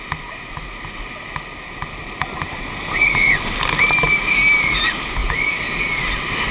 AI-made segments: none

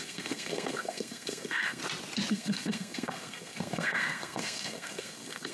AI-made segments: 0.0-1.8 (codec, SNAC); 2.3-5.5

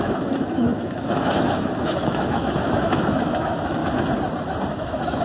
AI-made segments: 0.0-3.8 (autoencoder, DAC-VAE); 4.7-5.2

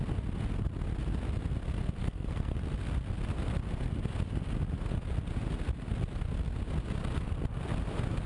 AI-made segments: 2.0-2.6 (codec, SNAC)

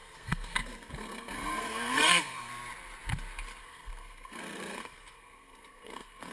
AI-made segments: 0.0-2.5 (codec, SNAC); 3.6-6.3